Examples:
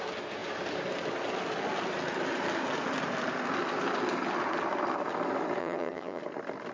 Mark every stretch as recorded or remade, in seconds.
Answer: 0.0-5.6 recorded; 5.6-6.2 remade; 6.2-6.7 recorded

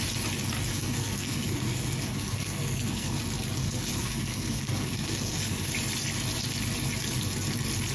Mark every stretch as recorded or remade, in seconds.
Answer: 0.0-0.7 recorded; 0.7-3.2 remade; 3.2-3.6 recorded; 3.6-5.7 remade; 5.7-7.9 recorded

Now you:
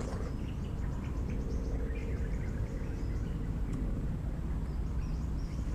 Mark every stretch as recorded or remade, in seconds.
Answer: 0.0-2.0 recorded; 2.0-4.1 remade; 4.1-5.7 recorded